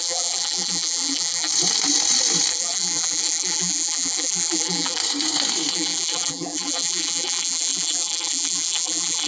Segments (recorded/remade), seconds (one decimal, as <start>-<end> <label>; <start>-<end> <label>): 0.0-1.5 remade; 1.5-2.5 recorded; 2.5-5.0 remade; 5.0-5.7 recorded; 5.7-9.3 remade